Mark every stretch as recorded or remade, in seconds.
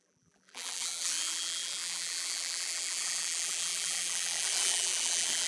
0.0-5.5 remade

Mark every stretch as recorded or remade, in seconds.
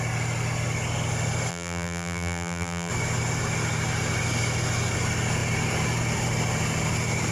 0.0-1.5 recorded; 1.5-2.9 remade; 2.9-7.3 recorded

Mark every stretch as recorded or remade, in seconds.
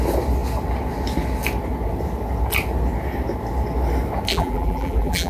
0.0-4.3 recorded; 4.3-5.3 remade